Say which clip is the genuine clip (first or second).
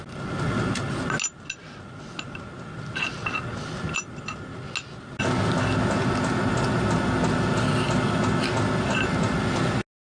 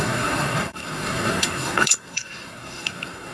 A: first